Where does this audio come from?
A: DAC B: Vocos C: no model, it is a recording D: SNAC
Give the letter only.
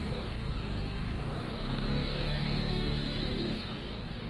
A